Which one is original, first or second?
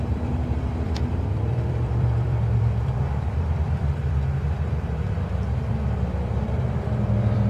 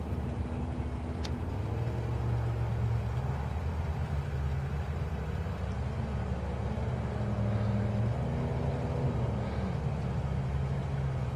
second